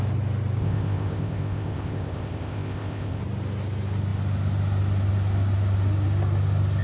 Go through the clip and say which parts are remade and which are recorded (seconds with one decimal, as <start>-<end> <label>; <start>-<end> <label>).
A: 0.0-0.6 recorded; 0.6-3.2 remade; 3.2-6.8 recorded